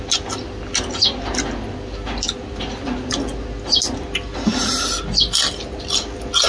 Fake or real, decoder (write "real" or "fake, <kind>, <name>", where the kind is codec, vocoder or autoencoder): real